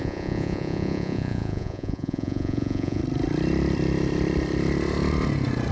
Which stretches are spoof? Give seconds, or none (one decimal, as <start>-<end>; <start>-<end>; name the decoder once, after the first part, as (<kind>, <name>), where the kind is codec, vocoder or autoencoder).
0.0-3.0 (vocoder, Vocos)